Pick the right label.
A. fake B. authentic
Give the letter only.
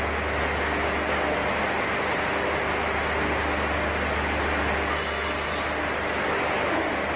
B